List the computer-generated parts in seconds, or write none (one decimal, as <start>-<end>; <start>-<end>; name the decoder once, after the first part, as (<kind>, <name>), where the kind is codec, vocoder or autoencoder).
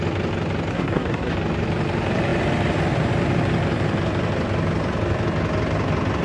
0.7-1.3 (codec, SNAC)